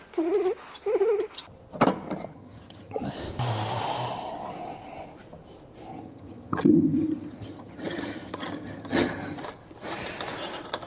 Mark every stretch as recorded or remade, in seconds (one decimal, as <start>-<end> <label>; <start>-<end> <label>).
0.0-2.3 recorded; 2.3-3.0 remade; 3.0-5.9 recorded; 5.9-9.4 remade; 9.4-10.9 recorded